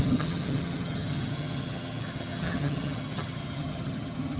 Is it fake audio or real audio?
fake